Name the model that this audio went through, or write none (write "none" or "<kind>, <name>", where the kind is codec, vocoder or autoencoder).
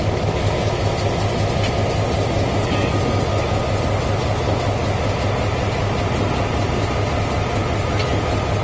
none